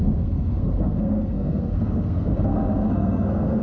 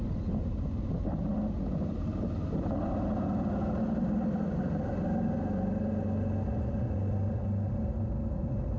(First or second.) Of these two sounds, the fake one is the first